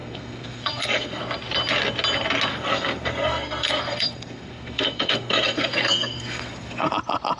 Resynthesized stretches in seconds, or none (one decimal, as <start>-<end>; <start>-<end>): 0.0-1.2; 2.5-6.9